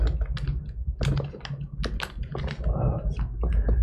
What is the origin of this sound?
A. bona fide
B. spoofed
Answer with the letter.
A